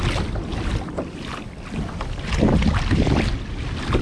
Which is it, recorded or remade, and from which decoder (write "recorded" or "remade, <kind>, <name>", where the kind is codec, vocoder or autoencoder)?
recorded